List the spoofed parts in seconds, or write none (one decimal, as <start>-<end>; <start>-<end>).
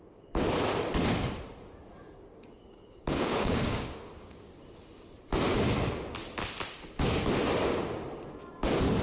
2.3-4.5